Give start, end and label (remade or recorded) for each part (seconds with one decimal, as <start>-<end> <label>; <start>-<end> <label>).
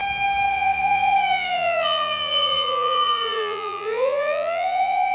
0.0-0.5 recorded; 0.5-5.1 remade